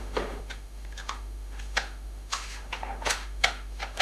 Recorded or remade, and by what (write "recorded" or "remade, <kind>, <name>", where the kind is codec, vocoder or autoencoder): remade, autoencoder, DAC-VAE